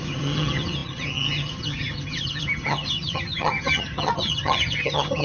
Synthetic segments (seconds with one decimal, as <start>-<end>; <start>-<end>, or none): 0.0-5.2